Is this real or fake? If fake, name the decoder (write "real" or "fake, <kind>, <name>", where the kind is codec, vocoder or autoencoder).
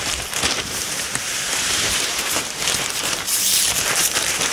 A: fake, vocoder, BigVGAN v2